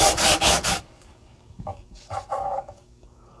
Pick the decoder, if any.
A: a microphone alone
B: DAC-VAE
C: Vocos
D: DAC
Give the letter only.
D